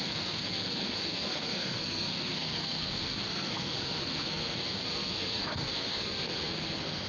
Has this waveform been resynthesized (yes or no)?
yes